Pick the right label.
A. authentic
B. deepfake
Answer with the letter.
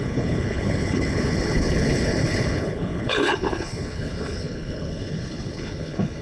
B